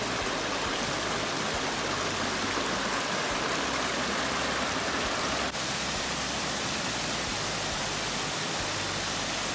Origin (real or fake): real